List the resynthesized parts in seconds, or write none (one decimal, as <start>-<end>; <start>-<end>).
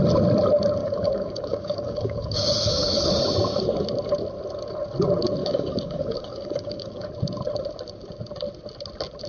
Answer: 0.8-3.2; 5.4-7.1